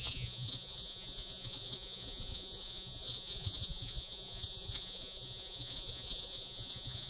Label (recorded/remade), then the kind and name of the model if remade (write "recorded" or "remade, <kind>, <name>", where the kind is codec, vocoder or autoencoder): remade, vocoder, Vocos